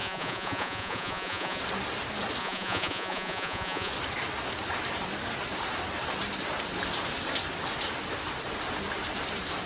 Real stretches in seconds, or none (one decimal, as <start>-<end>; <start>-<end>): 1.6-2.4; 3.9-9.7